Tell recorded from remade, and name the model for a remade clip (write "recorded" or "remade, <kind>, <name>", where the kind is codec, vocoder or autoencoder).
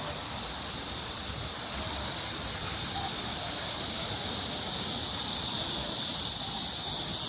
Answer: recorded